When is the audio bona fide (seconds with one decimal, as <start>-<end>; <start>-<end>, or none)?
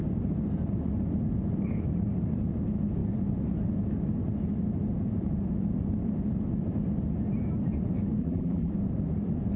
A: 0.0-8.2; 8.7-9.6